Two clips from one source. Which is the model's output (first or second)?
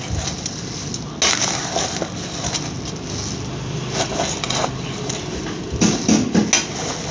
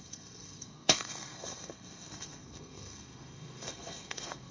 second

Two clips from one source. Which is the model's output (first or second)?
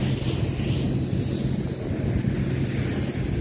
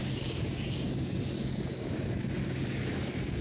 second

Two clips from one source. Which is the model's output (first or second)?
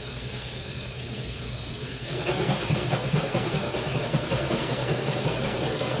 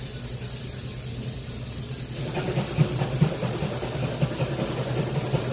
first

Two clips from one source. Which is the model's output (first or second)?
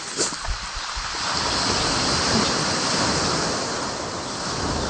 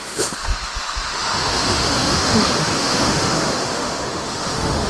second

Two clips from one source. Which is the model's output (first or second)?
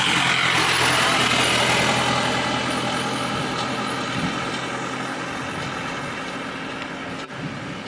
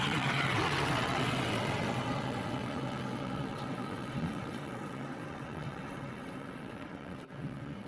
second